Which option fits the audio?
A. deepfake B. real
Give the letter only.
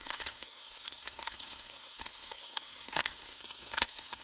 A